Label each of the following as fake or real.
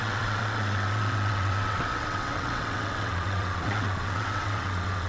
fake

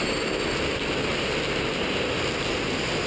real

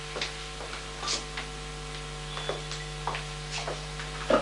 real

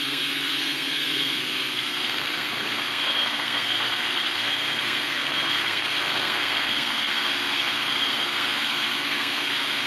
fake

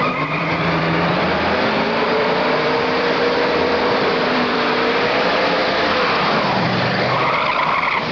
fake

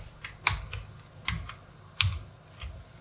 real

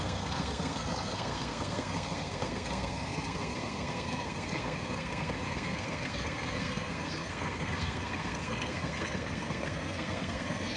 fake